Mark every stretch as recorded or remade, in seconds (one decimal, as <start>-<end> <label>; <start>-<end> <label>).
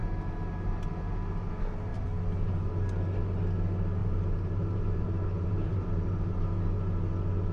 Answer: 0.0-1.9 recorded; 1.9-2.7 remade; 2.7-4.0 recorded; 4.0-6.6 remade; 6.6-7.5 recorded